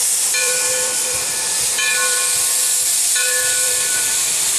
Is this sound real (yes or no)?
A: no